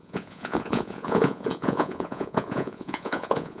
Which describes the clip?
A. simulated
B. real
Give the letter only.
A